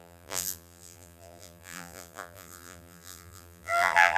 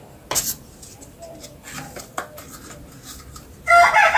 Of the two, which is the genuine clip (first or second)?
second